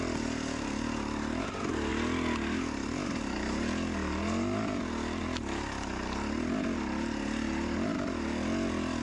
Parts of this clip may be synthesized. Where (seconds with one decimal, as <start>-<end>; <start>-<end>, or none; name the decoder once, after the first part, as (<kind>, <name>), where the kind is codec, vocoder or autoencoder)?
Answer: none